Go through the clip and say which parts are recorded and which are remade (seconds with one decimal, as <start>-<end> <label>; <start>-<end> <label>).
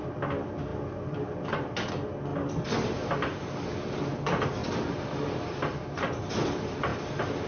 0.0-0.7 recorded; 0.7-1.9 remade; 1.9-4.6 recorded; 4.6-6.3 remade; 6.3-7.5 recorded